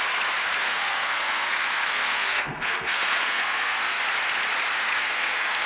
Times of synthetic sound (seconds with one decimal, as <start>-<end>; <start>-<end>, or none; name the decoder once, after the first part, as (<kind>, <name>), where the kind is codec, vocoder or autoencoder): 0.6-4.0 (codec, SNAC); 4.9-5.7